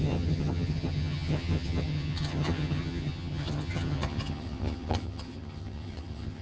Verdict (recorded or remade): remade